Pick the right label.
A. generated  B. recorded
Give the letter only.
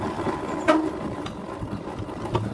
B